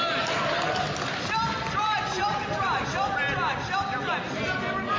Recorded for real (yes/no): yes